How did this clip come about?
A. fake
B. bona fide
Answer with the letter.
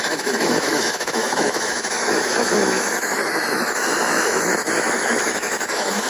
A